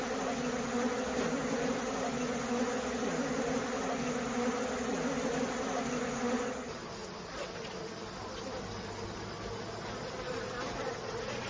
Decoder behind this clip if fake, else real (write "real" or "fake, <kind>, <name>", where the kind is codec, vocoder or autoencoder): real